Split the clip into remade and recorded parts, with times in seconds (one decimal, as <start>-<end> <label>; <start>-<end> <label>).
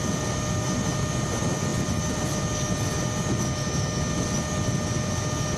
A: 0.0-5.6 recorded